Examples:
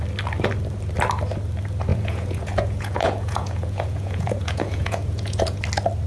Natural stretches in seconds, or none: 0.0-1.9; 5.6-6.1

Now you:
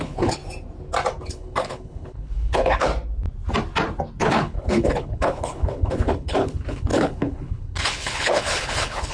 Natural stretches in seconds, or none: 0.4-1.3; 2.9-4.2

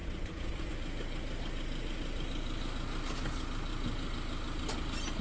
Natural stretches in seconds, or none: 0.7-5.2

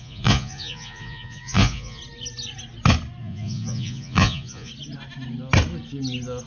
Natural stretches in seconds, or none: 2.0-3.2; 4.7-6.5

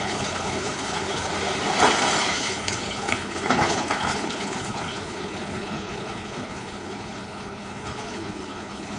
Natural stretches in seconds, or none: 1.3-2.2

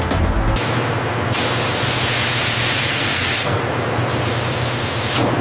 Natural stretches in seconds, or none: 0.0-2.9; 3.6-5.4